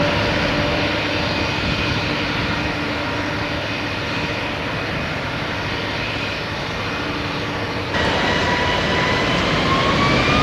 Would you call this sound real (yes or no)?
yes